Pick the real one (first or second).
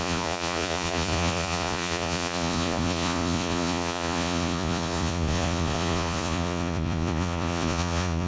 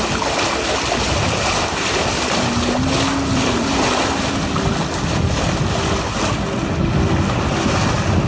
second